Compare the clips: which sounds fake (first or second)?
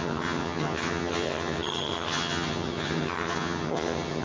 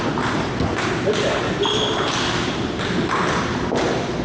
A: first